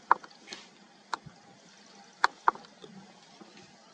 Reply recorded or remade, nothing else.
recorded